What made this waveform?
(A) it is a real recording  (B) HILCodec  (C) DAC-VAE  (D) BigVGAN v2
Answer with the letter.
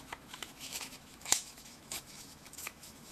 C